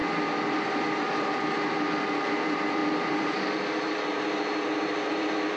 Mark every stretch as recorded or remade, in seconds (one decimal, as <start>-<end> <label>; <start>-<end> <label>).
0.0-5.6 recorded